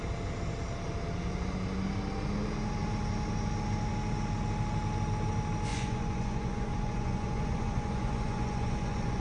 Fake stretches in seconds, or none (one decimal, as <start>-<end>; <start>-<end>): 5.7-9.2